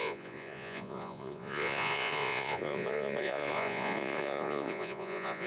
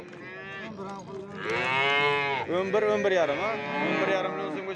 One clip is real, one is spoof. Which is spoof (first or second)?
first